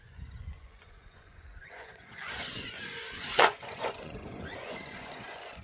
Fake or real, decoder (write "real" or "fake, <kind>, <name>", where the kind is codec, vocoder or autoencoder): fake, vocoder, Vocos